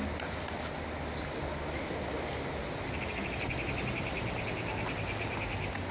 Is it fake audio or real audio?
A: real